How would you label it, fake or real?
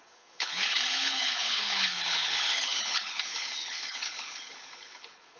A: fake